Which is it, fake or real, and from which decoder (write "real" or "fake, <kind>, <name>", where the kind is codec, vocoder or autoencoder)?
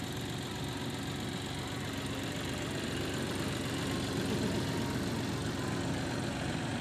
real